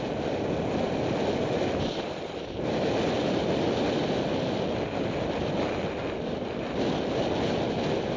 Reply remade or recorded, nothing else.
recorded